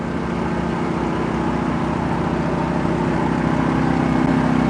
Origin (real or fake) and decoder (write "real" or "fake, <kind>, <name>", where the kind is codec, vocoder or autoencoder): real